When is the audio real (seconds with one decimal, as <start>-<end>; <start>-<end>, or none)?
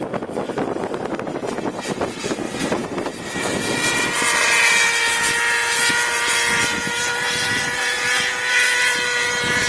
0.0-9.7